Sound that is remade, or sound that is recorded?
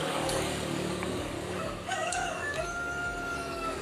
remade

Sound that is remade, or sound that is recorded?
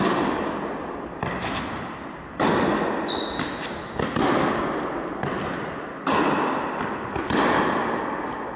recorded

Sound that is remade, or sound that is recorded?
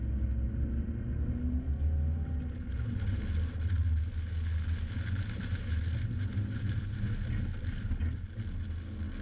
recorded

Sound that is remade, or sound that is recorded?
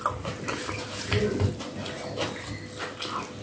recorded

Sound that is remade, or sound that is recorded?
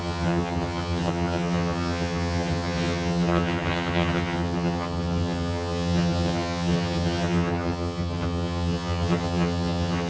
remade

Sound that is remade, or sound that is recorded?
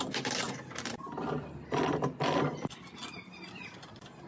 recorded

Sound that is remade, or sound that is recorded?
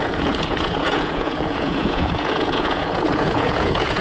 remade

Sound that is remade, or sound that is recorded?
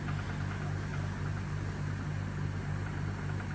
recorded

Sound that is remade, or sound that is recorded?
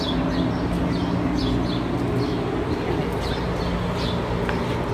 recorded